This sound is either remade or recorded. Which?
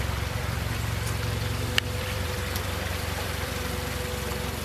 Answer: remade